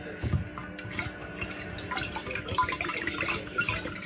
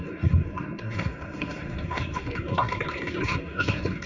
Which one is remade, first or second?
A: second